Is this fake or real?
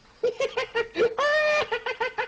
real